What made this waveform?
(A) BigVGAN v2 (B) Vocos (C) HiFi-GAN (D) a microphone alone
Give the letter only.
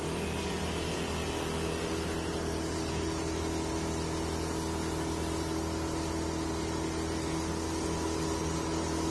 D